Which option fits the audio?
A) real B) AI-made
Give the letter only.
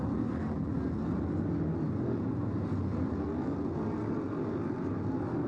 A